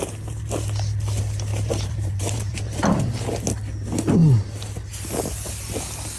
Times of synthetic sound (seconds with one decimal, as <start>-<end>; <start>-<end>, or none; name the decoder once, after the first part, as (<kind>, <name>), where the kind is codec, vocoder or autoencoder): 1.5-3.0 (vocoder, BigVGAN v2)